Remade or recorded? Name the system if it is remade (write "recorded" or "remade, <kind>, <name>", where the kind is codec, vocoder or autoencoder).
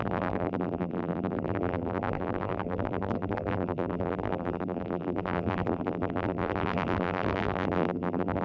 remade, vocoder, BigVGAN v2